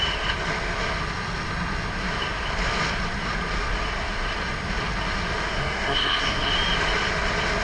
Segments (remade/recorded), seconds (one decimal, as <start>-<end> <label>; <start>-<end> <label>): 0.0-5.5 recorded; 5.5-6.5 remade; 6.5-7.6 recorded